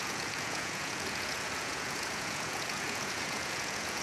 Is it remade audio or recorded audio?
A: remade